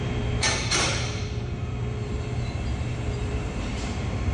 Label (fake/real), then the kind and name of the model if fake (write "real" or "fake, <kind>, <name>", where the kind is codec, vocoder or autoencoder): fake, vocoder, BigVGAN v2